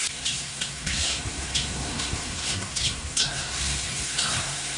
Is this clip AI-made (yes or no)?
yes